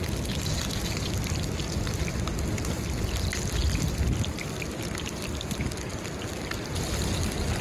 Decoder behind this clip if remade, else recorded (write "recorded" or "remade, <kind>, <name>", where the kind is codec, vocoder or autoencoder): recorded